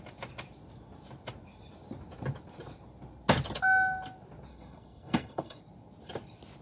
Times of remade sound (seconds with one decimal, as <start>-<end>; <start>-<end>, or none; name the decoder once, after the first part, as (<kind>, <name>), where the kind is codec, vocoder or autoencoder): 4.5-5.6 (codec, SNAC)